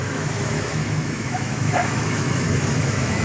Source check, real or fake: fake